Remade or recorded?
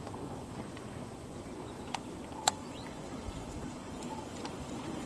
remade